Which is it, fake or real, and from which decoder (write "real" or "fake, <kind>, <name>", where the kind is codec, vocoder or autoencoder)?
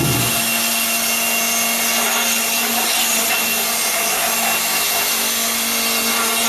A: real